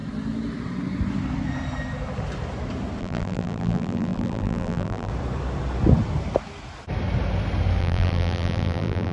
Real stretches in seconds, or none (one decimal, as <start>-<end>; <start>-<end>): 0.0-3.0; 5.1-7.8